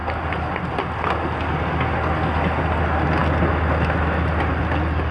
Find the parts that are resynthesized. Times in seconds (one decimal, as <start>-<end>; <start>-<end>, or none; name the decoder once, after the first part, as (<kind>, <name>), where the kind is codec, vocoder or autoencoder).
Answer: none

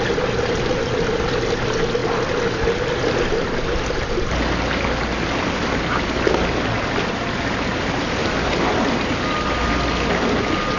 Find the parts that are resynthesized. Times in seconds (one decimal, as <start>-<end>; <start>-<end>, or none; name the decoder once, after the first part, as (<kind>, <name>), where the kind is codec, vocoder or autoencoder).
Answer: none

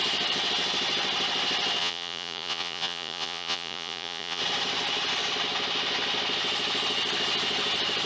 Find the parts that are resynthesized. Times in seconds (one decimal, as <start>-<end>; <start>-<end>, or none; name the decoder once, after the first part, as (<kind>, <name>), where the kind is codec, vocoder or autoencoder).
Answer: 1.8-4.4 (vocoder, Vocos)

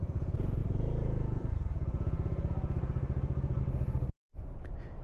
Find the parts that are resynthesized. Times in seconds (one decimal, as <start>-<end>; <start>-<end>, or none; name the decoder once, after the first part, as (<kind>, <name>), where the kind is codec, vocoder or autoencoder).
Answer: 0.0-5.0 (vocoder, Vocos)

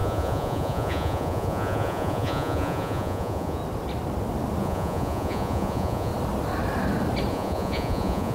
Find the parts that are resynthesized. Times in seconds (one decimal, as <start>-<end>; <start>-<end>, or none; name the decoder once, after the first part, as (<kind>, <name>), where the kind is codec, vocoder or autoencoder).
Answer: 0.0-3.6 (vocoder, Vocos); 4.6-6.1; 7.3-8.3

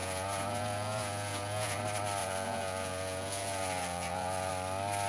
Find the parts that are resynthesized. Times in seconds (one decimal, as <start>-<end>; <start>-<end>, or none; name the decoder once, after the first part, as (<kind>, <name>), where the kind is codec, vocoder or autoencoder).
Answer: 0.0-1.8 (vocoder, Vocos); 2.2-4.5

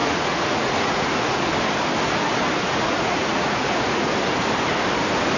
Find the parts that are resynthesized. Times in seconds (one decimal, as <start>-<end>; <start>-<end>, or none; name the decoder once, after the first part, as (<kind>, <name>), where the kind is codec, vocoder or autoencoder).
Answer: 0.0-1.4 (vocoder, Vocos); 2.6-4.1

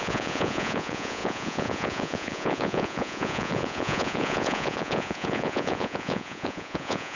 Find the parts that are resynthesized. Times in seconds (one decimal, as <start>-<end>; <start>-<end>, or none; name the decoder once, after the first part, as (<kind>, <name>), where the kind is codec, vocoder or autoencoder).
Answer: 0.0-7.2 (vocoder, Vocos)